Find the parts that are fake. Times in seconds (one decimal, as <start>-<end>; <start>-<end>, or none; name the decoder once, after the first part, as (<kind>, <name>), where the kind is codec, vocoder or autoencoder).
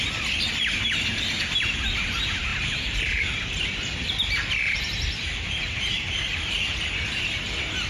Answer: 2.5-6.8 (vocoder, BigVGAN v2)